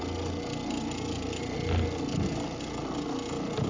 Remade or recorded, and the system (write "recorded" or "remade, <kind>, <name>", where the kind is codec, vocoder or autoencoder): recorded